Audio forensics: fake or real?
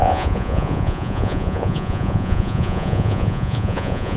fake